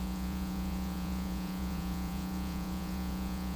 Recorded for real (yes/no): no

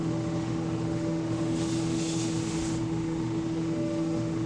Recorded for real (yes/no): no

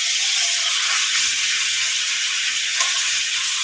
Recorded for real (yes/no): no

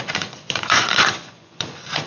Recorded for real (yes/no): no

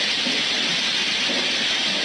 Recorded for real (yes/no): yes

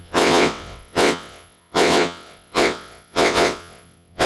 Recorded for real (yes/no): no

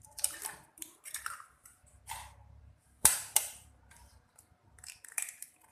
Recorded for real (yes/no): no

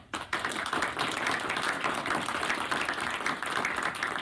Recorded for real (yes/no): yes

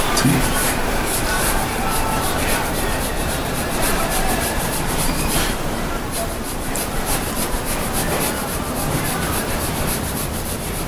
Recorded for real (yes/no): no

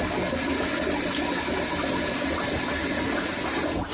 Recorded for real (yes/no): yes